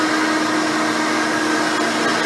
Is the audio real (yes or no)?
yes